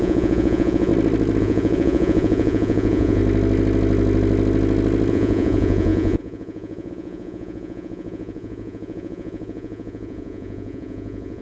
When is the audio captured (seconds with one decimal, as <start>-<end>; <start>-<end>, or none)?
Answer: 0.9-1.4; 3.2-5.1